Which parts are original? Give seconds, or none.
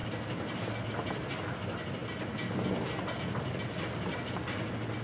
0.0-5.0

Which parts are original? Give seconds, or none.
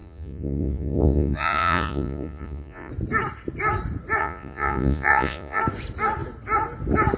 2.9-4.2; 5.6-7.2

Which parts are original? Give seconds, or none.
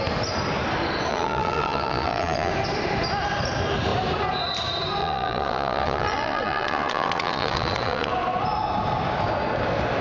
0.0-1.1; 2.5-5.0; 8.1-10.0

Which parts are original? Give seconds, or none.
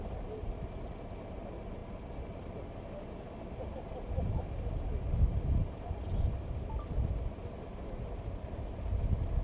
0.0-9.4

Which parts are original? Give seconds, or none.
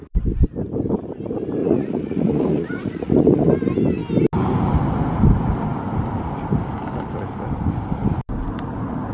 0.0-1.6; 3.5-9.1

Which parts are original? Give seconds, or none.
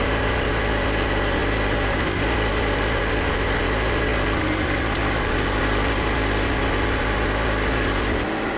0.0-8.6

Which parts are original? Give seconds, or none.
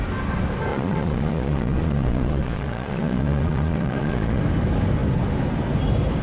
0.0-0.7; 4.4-6.2